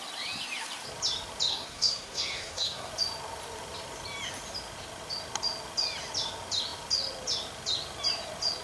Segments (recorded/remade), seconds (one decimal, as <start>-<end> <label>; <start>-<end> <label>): 0.0-1.5 recorded; 1.5-2.9 remade; 2.9-8.6 recorded

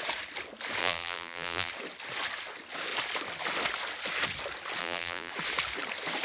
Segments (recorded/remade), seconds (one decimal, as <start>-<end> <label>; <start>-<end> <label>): 0.0-0.8 recorded; 0.8-1.7 remade; 1.7-4.8 recorded; 4.8-5.3 remade; 5.3-6.2 recorded

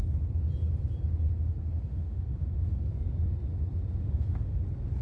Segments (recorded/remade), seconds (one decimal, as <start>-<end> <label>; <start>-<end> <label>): 0.0-1.9 recorded; 1.9-2.8 remade; 2.8-4.0 recorded; 4.0-4.6 remade; 4.6-5.0 recorded

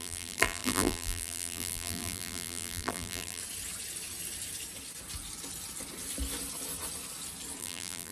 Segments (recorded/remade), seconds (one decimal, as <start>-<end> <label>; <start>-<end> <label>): 0.0-3.4 remade; 3.4-7.6 recorded; 7.6-8.1 remade